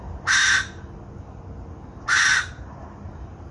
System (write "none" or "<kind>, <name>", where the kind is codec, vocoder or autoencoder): none